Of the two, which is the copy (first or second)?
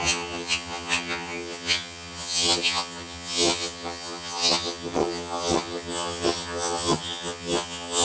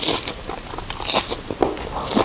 first